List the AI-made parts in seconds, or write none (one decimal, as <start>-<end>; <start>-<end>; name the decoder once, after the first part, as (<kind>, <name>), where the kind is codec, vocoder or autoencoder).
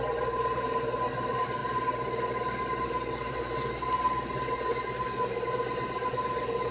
none